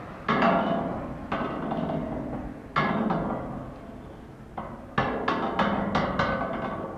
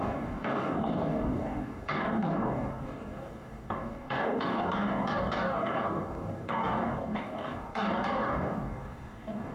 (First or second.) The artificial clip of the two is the second